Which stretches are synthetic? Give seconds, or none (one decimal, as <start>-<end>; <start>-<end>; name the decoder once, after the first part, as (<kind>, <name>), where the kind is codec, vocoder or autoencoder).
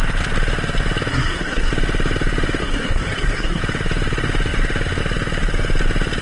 1.1-1.7 (codec, SNAC); 2.6-3.6